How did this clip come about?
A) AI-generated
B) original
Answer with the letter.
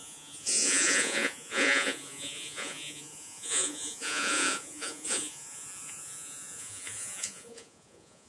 A